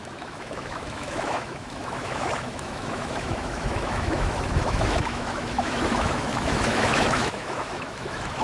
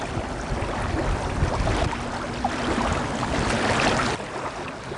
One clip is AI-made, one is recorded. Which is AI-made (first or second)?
first